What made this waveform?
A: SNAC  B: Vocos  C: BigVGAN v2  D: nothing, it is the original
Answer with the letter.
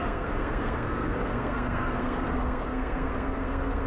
A